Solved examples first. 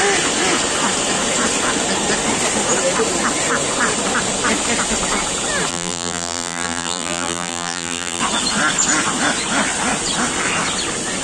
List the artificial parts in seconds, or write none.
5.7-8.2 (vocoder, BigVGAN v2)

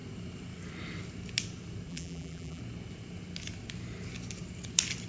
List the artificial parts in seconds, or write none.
1.9-2.6 (vocoder, BigVGAN v2)